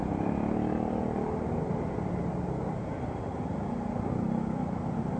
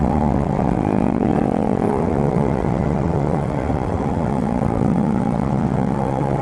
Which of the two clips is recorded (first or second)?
first